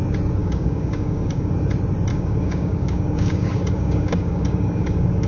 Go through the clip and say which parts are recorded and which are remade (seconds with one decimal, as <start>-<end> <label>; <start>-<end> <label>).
0.0-0.4 recorded; 0.4-1.5 remade; 1.5-2.1 recorded; 2.1-5.3 remade